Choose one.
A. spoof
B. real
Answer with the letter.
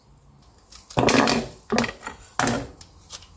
B